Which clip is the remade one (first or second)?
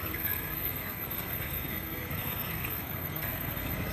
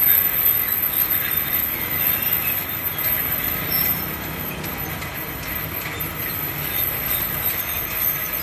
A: first